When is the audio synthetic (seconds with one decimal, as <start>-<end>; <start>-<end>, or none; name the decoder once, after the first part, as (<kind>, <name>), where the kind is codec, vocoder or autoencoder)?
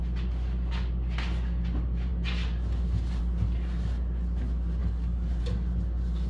4.8-5.4 (codec, DAC)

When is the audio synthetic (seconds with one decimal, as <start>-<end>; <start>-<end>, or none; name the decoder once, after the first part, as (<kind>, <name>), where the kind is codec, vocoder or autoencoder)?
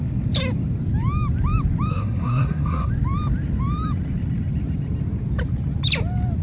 1.9-2.9 (codec, SNAC)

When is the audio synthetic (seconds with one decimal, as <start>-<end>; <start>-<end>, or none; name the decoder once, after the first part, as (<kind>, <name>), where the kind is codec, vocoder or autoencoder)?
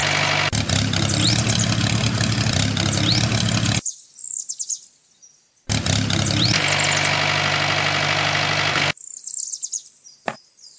none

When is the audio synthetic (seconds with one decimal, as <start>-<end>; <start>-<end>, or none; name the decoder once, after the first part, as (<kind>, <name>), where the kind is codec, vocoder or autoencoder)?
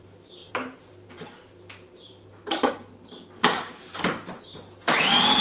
0.4-2.7 (vocoder, BigVGAN v2); 3.4-4.4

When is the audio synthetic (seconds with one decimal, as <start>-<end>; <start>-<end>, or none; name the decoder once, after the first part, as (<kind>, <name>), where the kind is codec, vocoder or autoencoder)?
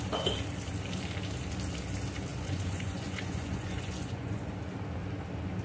2.3-4.5 (vocoder, Vocos)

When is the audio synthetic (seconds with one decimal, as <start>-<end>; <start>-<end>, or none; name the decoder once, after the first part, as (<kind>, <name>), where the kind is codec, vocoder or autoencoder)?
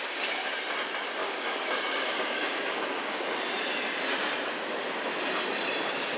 1.2-3.3 (codec, DAC)